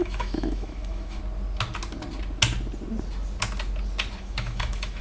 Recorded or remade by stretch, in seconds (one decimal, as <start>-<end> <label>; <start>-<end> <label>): 0.0-1.2 remade; 1.2-4.2 recorded; 4.2-5.0 remade